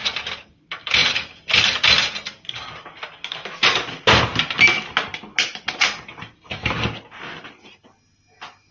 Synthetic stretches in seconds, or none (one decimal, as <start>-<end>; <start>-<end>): none